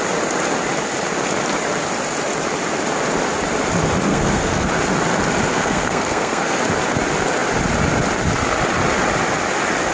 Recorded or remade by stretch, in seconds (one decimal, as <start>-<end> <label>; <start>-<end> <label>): 0.0-4.1 recorded; 4.1-4.7 remade; 4.7-5.5 recorded; 5.5-6.6 remade; 6.6-9.9 recorded